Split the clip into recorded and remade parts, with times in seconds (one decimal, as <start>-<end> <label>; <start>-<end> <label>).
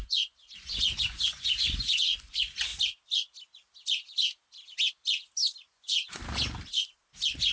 0.0-2.7 remade; 2.7-5.7 recorded; 5.7-6.2 remade; 6.2-7.5 recorded